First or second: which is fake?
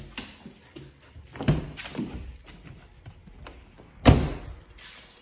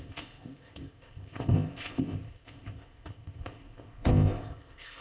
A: second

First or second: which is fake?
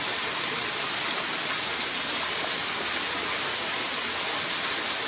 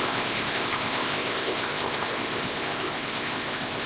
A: second